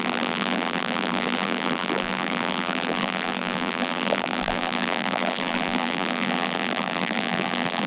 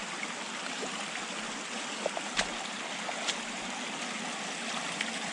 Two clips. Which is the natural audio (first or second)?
second